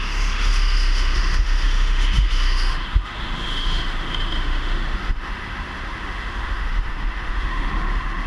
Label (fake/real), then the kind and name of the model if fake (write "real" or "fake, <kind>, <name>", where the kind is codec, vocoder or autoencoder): fake, autoencoder, DAC-VAE